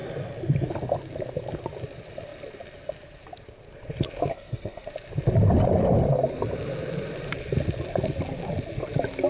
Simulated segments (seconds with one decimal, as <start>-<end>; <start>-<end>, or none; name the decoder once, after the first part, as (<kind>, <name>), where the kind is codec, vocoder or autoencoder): 4.3-4.9 (codec, SNAC)